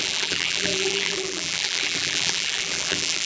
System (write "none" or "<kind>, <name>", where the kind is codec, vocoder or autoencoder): vocoder, BigVGAN v2